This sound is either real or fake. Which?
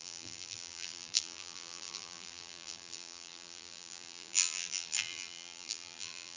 fake